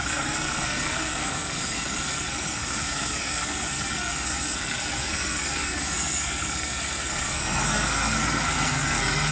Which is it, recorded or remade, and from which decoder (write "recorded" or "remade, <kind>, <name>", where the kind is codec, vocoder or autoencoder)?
remade, codec, SNAC